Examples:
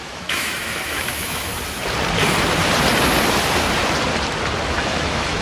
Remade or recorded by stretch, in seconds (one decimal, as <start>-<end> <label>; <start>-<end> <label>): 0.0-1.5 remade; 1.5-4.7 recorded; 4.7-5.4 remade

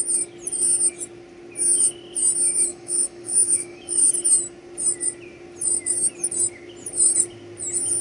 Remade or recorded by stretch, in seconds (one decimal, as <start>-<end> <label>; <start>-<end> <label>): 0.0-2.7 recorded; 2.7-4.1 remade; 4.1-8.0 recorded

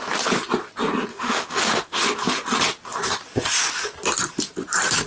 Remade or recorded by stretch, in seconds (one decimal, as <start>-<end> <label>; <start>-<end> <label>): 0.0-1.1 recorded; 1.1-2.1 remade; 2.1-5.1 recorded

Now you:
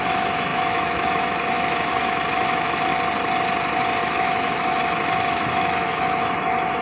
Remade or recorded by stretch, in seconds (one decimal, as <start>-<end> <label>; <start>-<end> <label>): 0.0-2.9 remade; 2.9-4.0 recorded; 4.0-6.8 remade

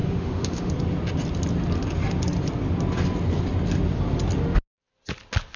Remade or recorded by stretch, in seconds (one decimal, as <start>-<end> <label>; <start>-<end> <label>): 0.0-0.7 remade; 0.7-5.6 recorded

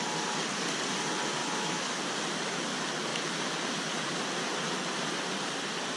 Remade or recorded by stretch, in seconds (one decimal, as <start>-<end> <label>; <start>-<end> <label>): 0.0-1.4 recorded; 1.4-2.0 remade; 2.0-6.0 recorded

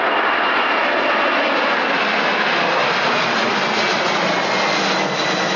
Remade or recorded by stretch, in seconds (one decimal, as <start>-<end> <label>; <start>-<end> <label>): 0.0-5.6 recorded

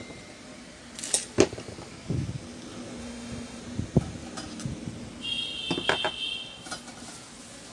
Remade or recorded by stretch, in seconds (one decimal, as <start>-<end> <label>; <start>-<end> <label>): 0.0-3.0 recorded; 3.0-3.6 remade; 3.6-7.7 recorded